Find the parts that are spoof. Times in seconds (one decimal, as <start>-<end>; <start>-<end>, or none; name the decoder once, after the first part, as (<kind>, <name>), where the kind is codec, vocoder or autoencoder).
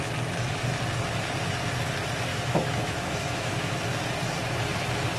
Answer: 2.3-3.7 (autoencoder, DAC-VAE)